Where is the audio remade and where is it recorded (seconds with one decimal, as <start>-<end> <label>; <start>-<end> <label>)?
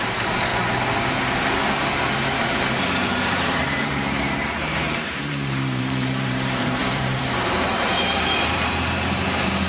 0.0-0.5 remade; 0.5-3.2 recorded; 3.2-9.7 remade